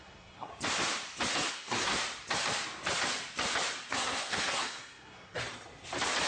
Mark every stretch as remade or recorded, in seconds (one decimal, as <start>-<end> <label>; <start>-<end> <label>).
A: 0.0-0.5 remade; 0.5-1.5 recorded; 1.5-1.9 remade; 1.9-3.9 recorded; 3.9-5.4 remade; 5.4-6.3 recorded